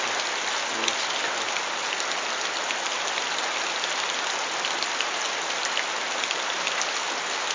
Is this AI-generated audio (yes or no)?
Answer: no